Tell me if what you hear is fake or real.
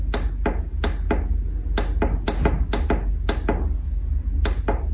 real